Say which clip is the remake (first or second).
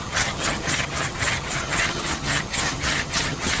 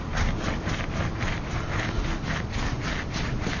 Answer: first